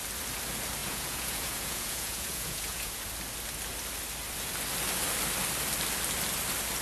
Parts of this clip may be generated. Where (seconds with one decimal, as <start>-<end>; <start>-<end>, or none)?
0.8-3.0